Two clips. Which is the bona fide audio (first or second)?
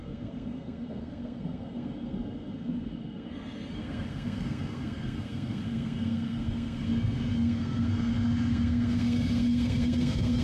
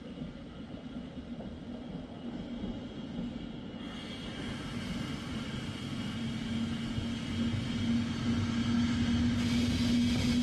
second